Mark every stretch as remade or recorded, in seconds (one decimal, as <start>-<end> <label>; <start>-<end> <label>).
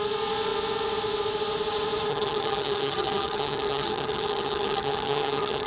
0.0-2.1 recorded; 2.1-5.7 remade